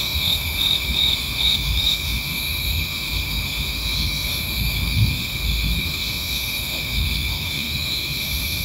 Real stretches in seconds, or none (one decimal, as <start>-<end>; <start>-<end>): none